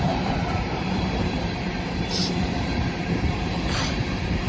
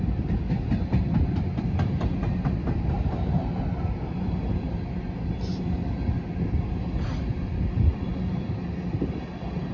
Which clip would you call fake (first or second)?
first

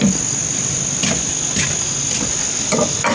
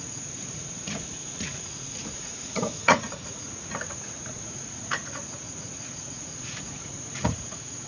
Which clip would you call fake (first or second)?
second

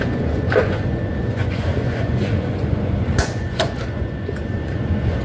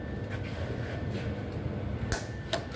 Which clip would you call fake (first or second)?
first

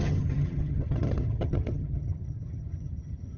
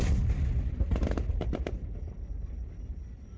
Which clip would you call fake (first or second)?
first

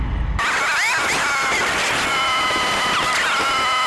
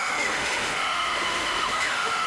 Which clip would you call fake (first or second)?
second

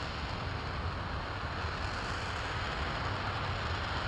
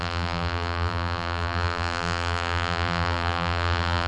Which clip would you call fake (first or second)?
second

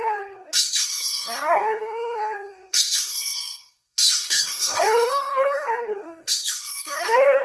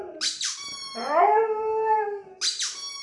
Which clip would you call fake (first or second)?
first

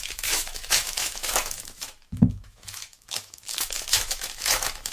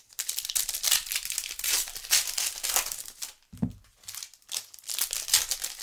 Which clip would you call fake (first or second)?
first